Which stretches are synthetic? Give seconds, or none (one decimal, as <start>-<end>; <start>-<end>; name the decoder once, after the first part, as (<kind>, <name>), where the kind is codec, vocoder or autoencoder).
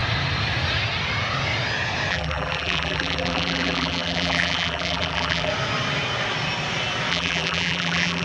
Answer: 2.1-5.5 (vocoder, BigVGAN v2); 7.1-8.2